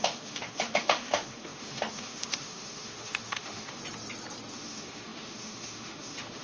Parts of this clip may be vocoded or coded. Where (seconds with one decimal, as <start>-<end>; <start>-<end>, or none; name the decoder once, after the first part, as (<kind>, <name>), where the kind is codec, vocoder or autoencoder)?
0.0-3.8 (autoencoder, DAC-VAE); 4.5-6.4

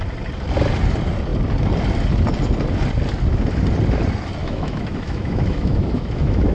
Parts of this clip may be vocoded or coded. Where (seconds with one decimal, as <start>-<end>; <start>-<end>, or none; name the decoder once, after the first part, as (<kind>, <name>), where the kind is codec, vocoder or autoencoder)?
4.4-6.5 (autoencoder, DAC-VAE)

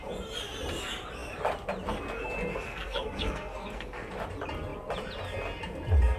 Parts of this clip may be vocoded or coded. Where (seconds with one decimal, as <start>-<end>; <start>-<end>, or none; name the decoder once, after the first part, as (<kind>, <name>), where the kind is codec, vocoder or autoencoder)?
2.5-4.1 (codec, SNAC)

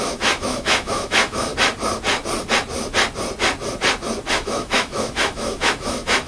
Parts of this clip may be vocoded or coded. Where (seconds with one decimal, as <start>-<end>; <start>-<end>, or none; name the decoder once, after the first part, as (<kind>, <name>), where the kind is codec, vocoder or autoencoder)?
0.0-1.5 (autoencoder, DAC-VAE); 4.3-6.3

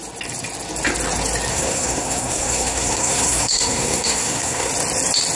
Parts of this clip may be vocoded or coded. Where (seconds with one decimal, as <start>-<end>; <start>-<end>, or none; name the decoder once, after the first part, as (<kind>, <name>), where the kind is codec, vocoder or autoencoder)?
1.5-4.7 (codec, SNAC)

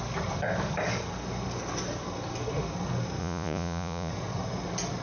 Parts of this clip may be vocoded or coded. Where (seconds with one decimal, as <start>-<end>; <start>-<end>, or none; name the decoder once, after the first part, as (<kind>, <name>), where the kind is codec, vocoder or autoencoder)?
3.2-4.1 (vocoder, Vocos)

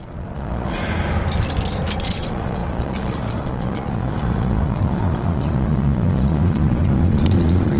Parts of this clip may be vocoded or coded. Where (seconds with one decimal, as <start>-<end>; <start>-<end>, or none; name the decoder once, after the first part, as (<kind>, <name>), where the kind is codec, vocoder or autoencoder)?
0.0-0.8 (vocoder, Vocos); 2.0-7.8